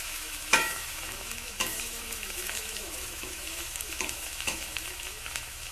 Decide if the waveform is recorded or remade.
remade